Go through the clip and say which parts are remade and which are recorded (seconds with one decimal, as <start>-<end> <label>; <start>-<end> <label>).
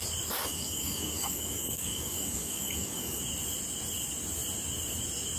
0.0-0.4 recorded; 0.4-3.2 remade; 3.2-5.4 recorded